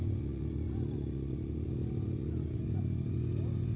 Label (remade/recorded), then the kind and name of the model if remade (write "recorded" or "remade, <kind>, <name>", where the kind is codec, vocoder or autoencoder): remade, vocoder, Vocos